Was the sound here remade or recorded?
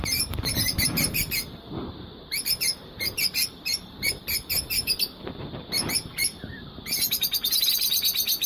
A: remade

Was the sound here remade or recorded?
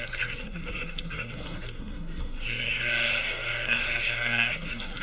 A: remade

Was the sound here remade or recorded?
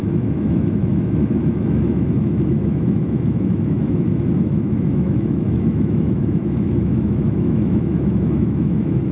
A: remade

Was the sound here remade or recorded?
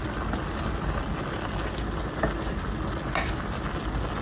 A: recorded